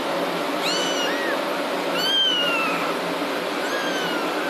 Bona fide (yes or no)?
yes